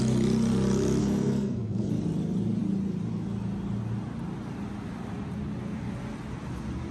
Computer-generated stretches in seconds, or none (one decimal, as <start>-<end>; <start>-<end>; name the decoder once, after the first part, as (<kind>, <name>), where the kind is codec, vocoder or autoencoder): 1.0-1.9 (codec, SNAC)